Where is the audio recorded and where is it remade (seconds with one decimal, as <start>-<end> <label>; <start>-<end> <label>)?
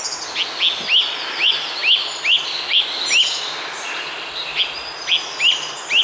0.0-6.0 recorded